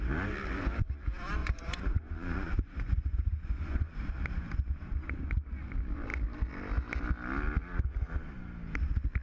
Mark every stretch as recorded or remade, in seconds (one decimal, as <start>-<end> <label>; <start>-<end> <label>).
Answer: 0.0-1.4 recorded; 1.4-4.0 remade; 4.0-9.2 recorded